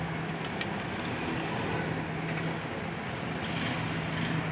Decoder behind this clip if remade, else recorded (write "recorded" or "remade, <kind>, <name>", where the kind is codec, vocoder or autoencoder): recorded